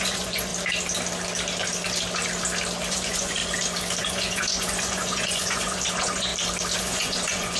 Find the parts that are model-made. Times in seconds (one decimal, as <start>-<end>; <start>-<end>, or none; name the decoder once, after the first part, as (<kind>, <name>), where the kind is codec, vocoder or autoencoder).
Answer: 0.0-0.5 (vocoder, Vocos); 2.9-3.4; 4.0-6.3; 6.8-7.6